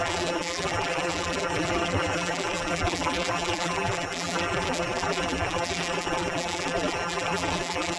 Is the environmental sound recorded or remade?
remade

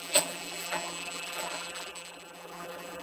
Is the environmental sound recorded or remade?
remade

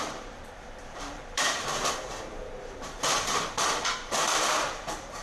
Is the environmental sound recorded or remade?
remade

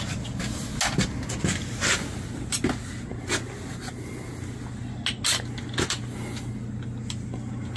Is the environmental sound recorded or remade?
recorded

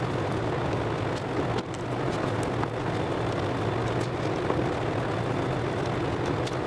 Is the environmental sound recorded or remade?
recorded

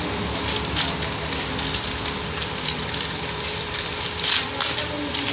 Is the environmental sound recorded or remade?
recorded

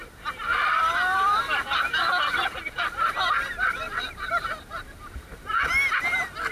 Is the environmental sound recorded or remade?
recorded